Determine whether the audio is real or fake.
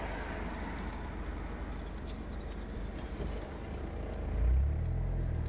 real